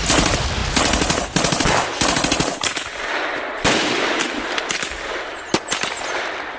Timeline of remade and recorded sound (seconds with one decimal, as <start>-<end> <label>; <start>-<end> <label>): 0.0-6.6 recorded